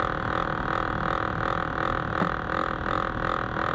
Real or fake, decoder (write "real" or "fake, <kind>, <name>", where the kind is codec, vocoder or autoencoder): real